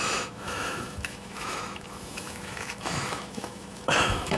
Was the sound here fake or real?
fake